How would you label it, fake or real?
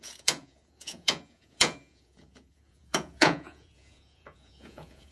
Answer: fake